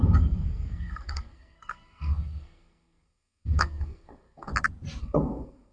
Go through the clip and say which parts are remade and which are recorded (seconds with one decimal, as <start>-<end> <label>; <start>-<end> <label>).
0.0-4.5 remade; 4.5-5.0 recorded; 5.0-5.7 remade